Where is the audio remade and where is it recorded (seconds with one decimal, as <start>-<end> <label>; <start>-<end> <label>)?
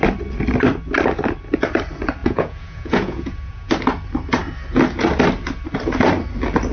0.0-2.2 recorded; 2.2-3.7 remade; 3.7-6.7 recorded